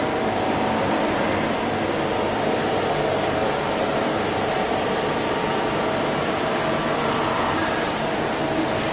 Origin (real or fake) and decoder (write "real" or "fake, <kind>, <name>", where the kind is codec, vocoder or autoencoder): fake, vocoder, BigVGAN v2